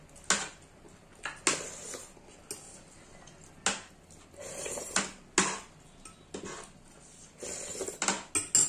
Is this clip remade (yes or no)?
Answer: no